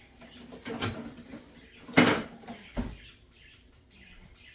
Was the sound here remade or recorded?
remade